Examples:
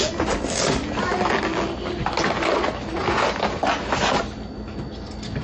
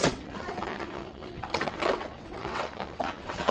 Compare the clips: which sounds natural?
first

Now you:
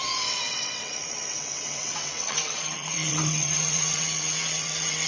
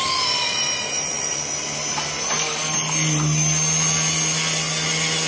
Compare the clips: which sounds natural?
second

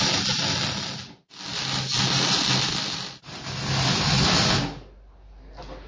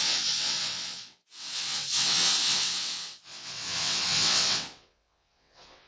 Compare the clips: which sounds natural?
first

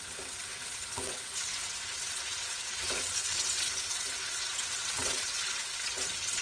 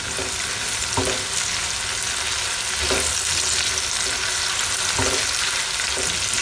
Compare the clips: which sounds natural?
second